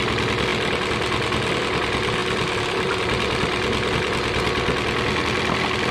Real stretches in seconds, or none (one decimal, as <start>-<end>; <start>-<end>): 0.0-5.9